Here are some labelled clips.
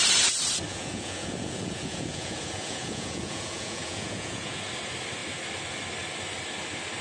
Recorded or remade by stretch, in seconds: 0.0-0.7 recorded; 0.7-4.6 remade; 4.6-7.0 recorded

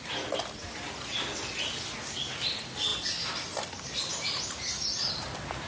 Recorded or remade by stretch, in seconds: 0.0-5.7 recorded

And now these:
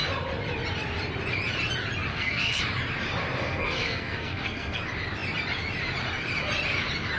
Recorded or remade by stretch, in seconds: 0.0-2.1 recorded; 2.1-2.6 remade; 2.6-3.4 recorded; 3.4-4.8 remade; 4.8-7.2 recorded

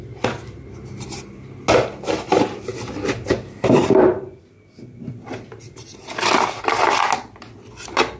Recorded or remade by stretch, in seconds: 0.0-2.7 recorded; 2.7-6.6 remade; 6.6-8.2 recorded